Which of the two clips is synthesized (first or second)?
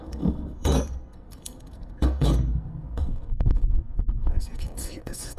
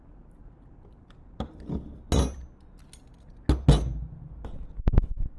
first